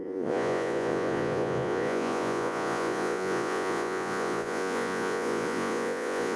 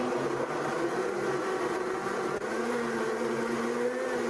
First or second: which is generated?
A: first